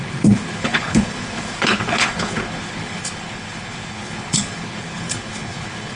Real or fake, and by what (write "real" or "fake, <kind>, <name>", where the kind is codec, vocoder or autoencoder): fake, codec, HILCodec